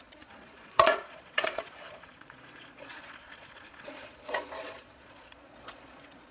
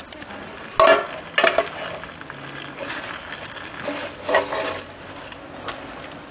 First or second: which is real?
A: second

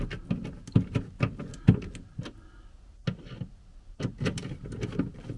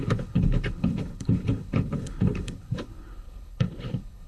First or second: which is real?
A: first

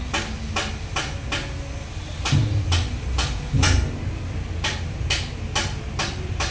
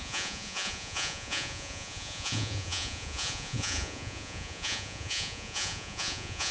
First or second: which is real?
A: first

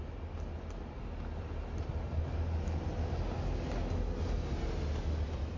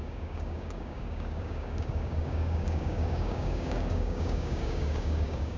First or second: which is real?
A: first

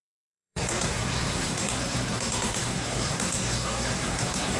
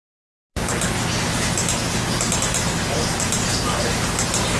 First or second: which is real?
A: second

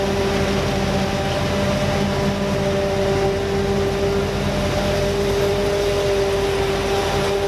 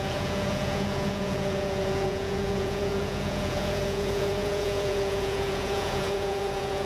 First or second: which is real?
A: first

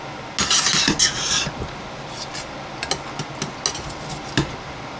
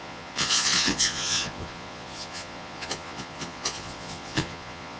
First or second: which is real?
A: first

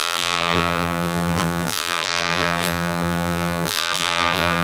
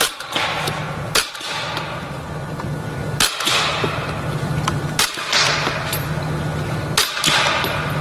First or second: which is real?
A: second